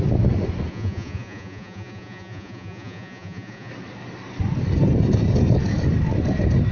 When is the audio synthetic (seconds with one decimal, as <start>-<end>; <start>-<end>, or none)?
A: 0.7-3.7